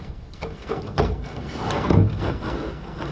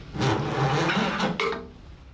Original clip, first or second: second